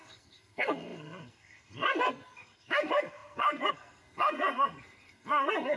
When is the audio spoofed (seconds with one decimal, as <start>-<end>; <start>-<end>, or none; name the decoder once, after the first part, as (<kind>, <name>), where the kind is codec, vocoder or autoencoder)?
0.0-5.8 (codec, SNAC)